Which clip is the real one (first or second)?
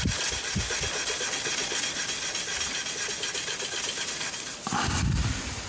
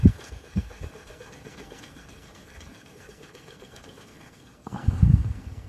first